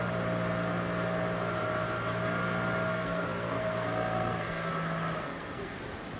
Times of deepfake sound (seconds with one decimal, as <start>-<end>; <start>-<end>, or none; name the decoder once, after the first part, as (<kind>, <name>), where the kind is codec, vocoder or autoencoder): 2.9-4.7 (codec, SNAC); 5.2-5.8